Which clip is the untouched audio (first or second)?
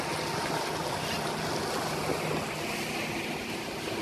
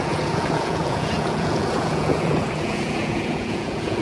first